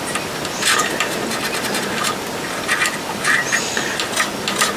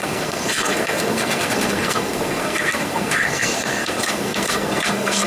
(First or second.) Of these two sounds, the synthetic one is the second